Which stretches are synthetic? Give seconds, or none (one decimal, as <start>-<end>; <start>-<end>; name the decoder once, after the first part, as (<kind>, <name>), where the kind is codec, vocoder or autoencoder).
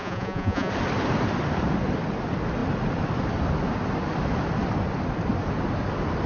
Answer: 0.0-0.7 (vocoder, Vocos)